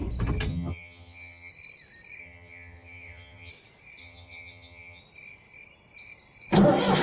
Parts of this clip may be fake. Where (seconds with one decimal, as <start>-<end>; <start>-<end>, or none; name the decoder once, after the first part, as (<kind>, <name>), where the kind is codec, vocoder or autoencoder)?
0.5-1.5 (vocoder, HiFi-GAN); 2.2-3.5; 4.0-5.0